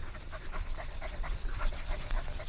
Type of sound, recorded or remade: recorded